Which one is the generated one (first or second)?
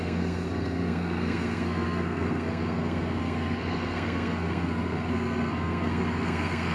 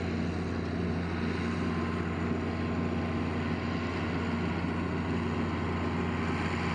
first